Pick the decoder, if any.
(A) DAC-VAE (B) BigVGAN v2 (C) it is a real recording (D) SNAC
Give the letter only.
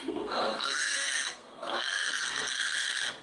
D